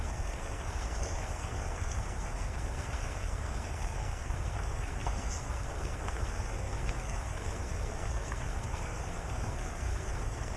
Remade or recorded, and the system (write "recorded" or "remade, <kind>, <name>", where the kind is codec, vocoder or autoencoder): remade, codec, SNAC